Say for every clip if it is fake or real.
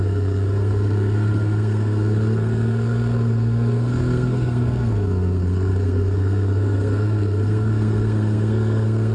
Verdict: fake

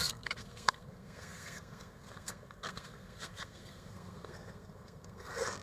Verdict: fake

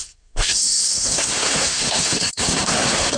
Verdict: fake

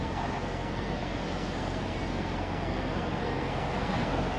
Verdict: fake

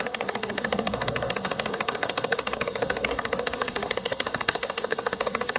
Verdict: fake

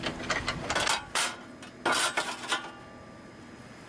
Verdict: real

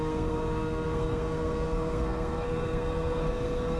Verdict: fake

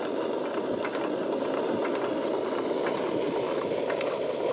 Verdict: real